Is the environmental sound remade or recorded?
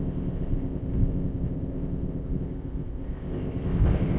remade